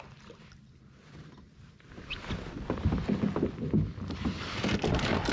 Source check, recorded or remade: recorded